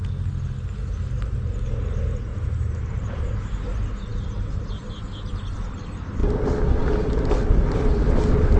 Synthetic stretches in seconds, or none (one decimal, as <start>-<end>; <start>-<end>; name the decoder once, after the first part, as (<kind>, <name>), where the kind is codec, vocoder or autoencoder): 2.3-3.5 (vocoder, BigVGAN v2)